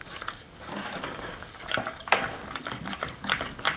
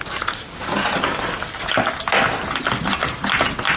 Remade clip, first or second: first